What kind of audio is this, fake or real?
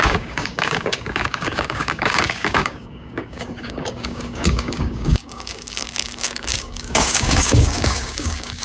fake